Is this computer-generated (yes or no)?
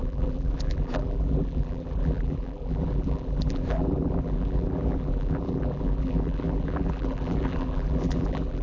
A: yes